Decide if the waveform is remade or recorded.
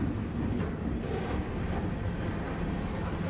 recorded